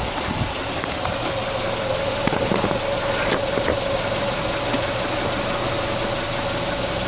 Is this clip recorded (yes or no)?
yes